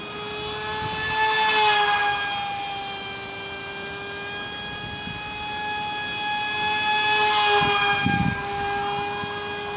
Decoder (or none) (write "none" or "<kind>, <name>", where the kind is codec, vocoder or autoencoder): none